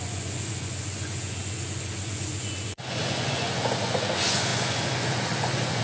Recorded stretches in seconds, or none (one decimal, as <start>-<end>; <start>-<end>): none